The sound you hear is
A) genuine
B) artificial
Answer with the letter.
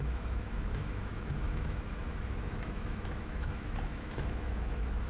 B